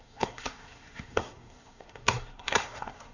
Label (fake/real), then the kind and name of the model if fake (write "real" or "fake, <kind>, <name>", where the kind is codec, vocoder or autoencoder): fake, codec, SNAC